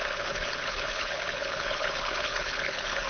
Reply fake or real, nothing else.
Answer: fake